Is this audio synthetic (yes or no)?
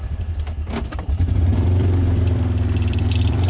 yes